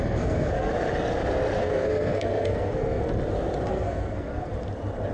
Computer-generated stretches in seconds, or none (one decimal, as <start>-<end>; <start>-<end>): 0.0-0.7; 1.6-3.1; 3.7-4.5